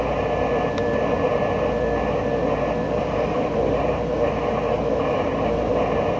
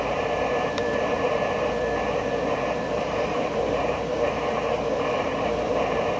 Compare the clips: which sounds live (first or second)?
first